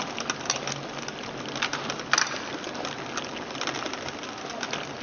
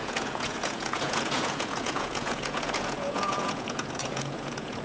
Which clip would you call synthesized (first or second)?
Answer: second